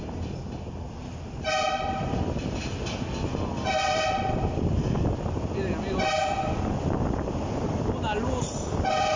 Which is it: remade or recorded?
recorded